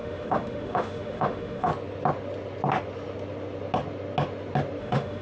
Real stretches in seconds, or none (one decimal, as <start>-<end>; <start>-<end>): 1.7-4.8